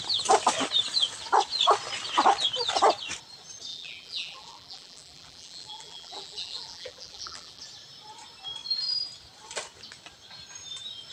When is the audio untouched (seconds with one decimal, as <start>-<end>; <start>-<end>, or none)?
0.0-3.7; 7.6-11.1

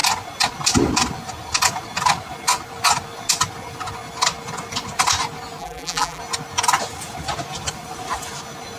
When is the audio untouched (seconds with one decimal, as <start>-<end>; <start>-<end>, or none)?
0.0-5.6; 6.2-8.8

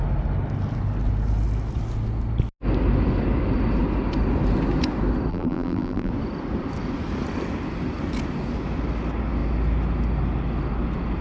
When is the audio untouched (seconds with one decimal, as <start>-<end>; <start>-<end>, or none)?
0.0-5.3; 6.1-11.2

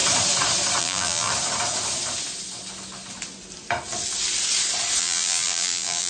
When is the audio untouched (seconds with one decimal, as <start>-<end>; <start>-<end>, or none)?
0.0-0.8; 1.3-5.0

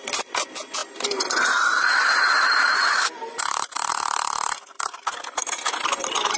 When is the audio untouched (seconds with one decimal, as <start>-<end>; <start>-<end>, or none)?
0.0-2.8; 3.9-6.4

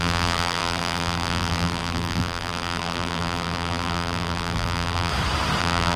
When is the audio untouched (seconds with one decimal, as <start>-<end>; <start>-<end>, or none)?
5.1-5.6